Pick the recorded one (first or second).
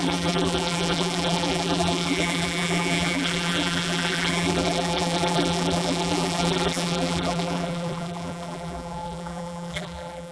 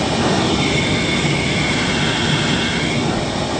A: second